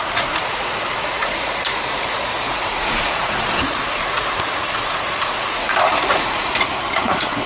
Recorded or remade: remade